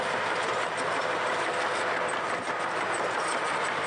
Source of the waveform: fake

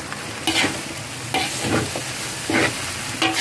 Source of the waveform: real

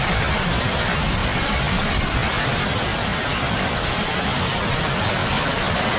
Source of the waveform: real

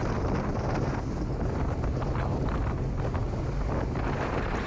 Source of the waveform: real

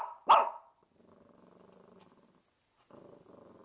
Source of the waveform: real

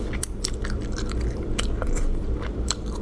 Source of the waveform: fake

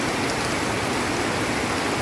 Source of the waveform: real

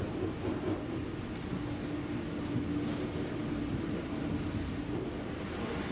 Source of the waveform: real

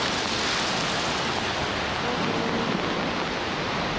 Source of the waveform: real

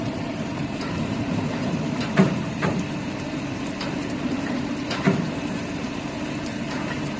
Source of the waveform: fake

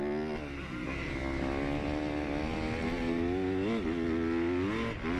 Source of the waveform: real